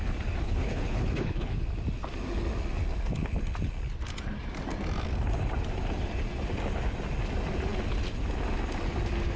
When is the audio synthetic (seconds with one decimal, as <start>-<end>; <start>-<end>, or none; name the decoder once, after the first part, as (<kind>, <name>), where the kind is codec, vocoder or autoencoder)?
0.4-1.6 (codec, HILCodec)